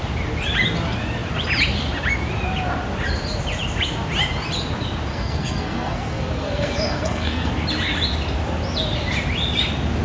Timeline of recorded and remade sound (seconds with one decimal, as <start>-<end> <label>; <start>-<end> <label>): 0.0-5.1 recorded; 5.1-7.5 remade; 7.5-10.0 recorded